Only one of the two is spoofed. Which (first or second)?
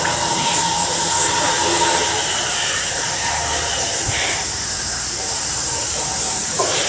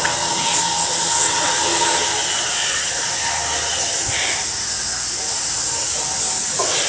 first